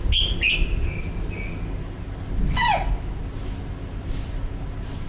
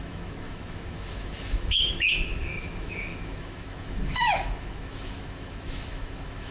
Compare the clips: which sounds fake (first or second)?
second